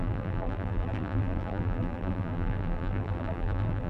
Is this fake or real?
fake